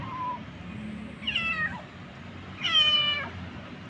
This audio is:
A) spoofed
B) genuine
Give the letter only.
B